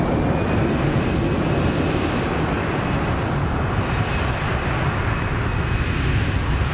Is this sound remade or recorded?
recorded